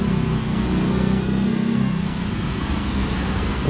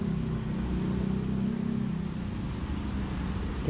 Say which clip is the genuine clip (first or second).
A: second